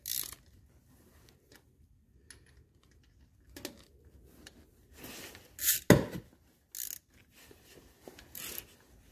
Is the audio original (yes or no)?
yes